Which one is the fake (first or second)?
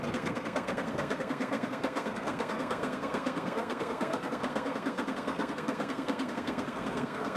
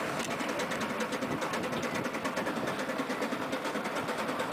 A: first